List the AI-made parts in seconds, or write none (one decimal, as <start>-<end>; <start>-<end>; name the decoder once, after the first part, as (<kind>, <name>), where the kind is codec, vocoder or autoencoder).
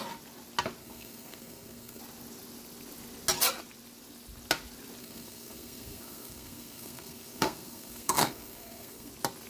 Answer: 0.8-2.0 (codec, SNAC); 5.0-9.1